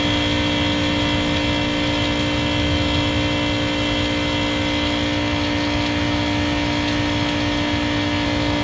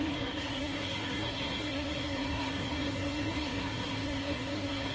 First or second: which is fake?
second